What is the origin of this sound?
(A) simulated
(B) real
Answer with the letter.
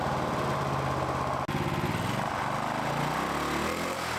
B